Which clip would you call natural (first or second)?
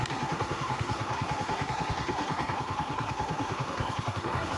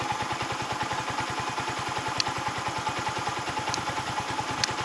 second